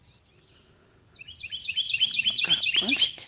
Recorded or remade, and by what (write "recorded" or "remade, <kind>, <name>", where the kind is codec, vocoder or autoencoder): recorded